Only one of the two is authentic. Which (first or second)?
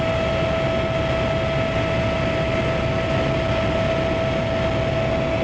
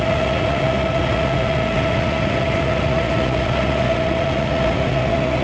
first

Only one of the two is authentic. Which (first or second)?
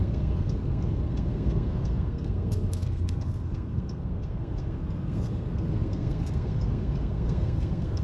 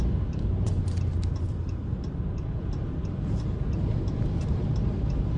second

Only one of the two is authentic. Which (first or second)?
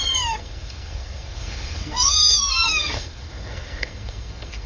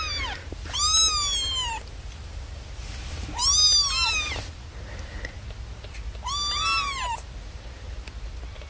second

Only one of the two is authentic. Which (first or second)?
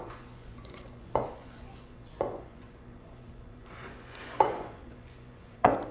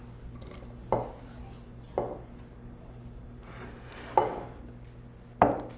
second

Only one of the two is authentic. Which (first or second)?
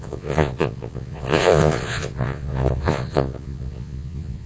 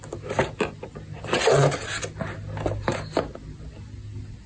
second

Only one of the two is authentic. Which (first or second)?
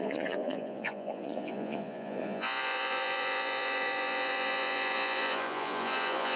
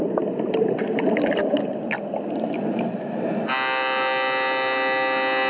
second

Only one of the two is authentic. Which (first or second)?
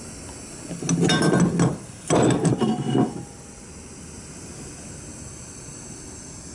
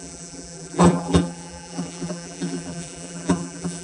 first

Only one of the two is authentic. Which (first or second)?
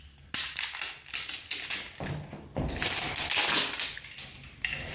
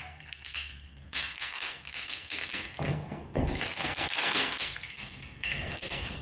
first